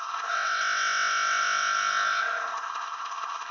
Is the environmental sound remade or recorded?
remade